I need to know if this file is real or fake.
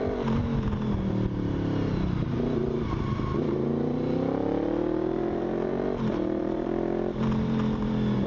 fake